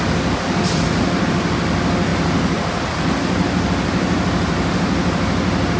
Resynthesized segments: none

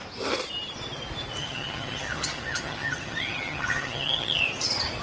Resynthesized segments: 1.4-4.4 (vocoder, HiFi-GAN)

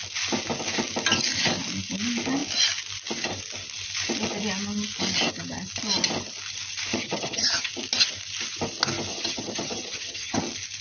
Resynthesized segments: 6.9-7.7 (vocoder, HiFi-GAN); 9.1-10.4

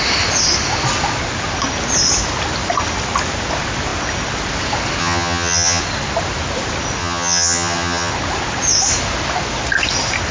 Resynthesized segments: 5.0-5.8 (vocoder, HiFi-GAN); 7.0-8.1

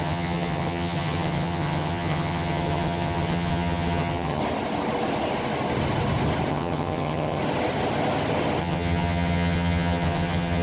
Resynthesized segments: 0.0-4.4 (vocoder, HiFi-GAN); 6.5-7.4; 8.6-10.6

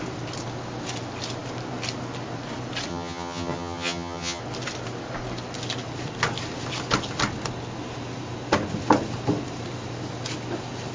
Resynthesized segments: 2.9-4.4 (vocoder, HiFi-GAN)

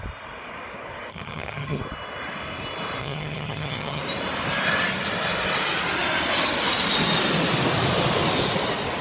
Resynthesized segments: 1.1-1.8 (vocoder, HiFi-GAN); 3.0-4.0